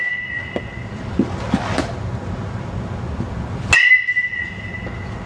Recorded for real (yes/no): yes